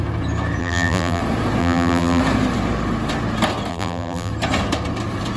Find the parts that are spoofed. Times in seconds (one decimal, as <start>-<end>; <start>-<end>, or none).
0.6-1.2; 1.6-2.2; 3.7-4.3